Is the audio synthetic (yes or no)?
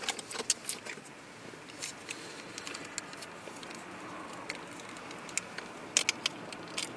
no